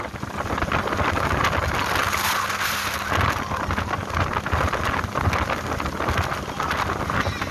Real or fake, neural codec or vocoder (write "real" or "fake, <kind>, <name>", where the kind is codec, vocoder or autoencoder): real